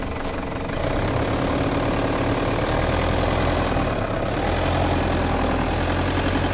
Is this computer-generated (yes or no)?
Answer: no